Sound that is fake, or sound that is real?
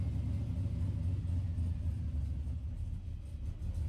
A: real